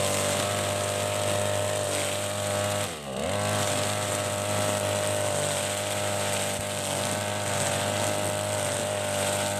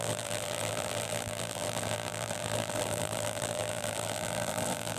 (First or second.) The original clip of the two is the first